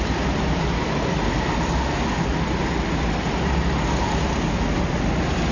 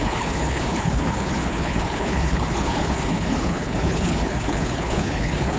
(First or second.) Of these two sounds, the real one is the first